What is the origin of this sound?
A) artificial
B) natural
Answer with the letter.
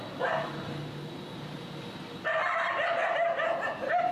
B